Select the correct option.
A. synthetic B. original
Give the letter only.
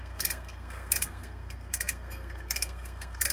A